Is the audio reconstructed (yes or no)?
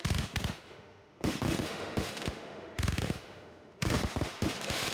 yes